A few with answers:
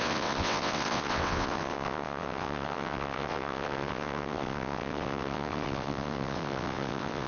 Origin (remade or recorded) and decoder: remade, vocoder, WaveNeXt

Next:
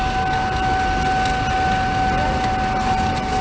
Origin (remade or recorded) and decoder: recorded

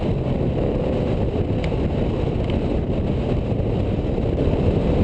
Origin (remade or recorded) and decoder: recorded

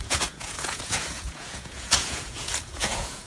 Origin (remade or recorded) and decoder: remade, vocoder, Vocos